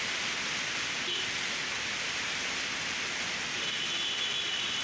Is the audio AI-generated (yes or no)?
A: no